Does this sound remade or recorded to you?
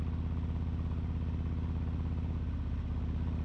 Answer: recorded